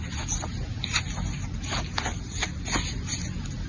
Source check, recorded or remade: recorded